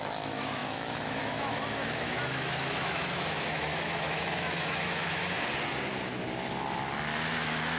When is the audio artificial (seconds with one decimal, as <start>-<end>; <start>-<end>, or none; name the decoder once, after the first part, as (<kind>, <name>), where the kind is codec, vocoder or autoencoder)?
0.0-5.2 (autoencoder, DAC-VAE); 7.3-7.8

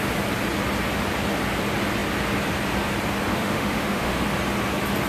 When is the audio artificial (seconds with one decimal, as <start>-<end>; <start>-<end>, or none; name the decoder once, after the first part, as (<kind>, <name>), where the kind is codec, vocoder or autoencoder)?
3.3-4.2 (autoencoder, DAC-VAE)

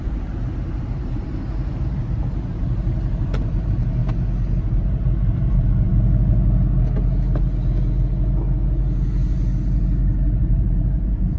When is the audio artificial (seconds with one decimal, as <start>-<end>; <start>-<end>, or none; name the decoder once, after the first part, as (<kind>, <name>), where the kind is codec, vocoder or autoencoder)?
0.0-4.0 (vocoder, BigVGAN v2); 4.6-5.9; 10.4-11.4

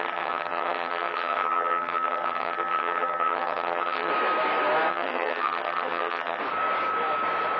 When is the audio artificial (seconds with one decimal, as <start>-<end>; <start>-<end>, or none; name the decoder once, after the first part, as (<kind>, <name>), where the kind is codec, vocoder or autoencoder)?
0.0-4.1 (vocoder, HiFi-GAN); 4.9-6.4

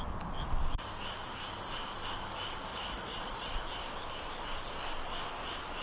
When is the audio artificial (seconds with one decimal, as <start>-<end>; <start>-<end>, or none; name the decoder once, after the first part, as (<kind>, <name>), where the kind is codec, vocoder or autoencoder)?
2.7-3.5 (vocoder, Vocos)

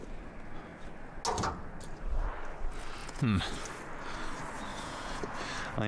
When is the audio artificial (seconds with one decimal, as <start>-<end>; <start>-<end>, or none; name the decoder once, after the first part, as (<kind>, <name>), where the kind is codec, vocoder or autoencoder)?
3.0-3.5 (vocoder, Vocos); 4.7-5.3

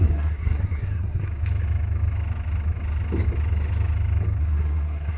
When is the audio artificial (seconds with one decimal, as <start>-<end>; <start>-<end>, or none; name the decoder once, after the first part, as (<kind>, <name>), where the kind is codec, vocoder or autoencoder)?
0.0-1.3 (codec, SNAC); 4.4-5.2